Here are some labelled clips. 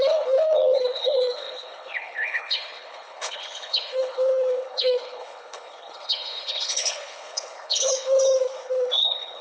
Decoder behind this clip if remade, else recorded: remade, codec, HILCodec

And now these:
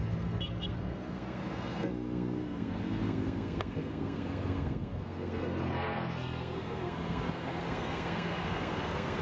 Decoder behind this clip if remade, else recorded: remade, codec, SNAC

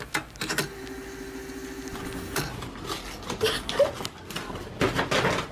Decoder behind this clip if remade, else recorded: recorded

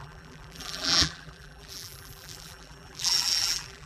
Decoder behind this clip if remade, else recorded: remade, vocoder, BigVGAN v2